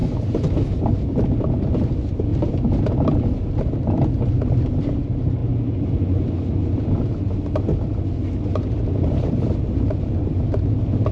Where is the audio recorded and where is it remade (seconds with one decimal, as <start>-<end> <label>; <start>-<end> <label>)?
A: 0.0-1.2 remade; 1.2-2.3 recorded; 2.3-2.9 remade; 2.9-11.1 recorded